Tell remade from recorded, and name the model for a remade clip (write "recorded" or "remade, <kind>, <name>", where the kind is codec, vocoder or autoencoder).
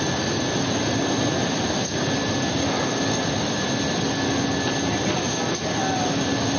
recorded